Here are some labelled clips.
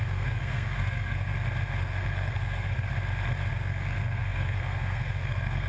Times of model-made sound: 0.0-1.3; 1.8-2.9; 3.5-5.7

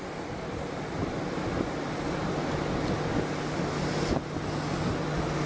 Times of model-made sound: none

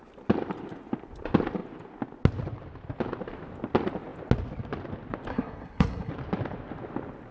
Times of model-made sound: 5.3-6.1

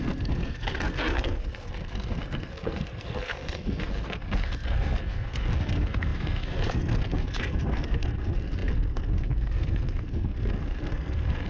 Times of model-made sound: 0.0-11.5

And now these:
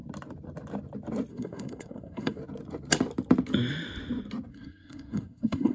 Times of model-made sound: 1.3-2.4; 4.5-5.7

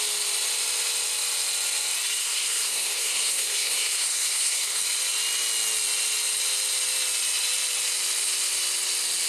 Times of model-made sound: 2.2-4.8

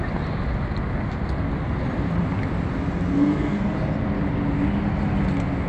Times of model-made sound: 3.1-3.6